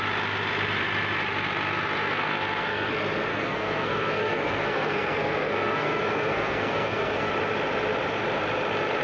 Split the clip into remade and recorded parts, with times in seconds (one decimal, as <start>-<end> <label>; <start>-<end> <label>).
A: 0.0-2.0 recorded; 2.0-2.9 remade; 2.9-3.3 recorded; 3.3-7.3 remade; 7.3-9.0 recorded